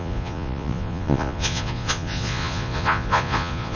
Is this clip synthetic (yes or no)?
yes